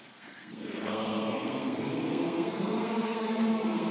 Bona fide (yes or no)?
no